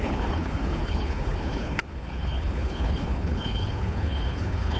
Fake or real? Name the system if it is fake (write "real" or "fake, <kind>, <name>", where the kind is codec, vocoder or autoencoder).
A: fake, codec, HILCodec